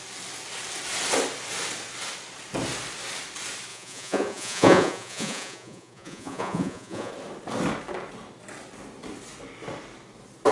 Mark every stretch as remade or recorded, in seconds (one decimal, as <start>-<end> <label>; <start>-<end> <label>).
0.0-3.7 recorded; 3.7-7.1 remade; 7.1-10.5 recorded